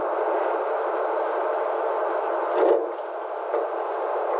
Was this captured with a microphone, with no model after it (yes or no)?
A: yes